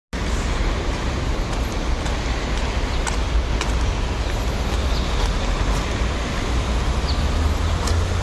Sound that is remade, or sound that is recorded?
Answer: recorded